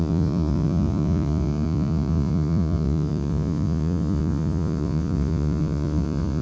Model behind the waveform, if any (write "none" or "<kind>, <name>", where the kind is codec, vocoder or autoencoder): vocoder, Vocos